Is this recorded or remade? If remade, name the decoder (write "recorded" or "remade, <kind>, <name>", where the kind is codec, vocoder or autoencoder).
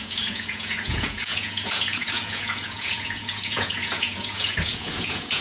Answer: remade, vocoder, Vocos